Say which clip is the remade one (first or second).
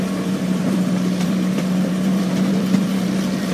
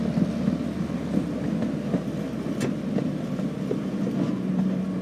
first